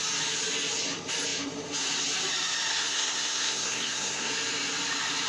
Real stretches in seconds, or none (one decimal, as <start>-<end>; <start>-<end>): 0.0-2.7; 4.3-5.3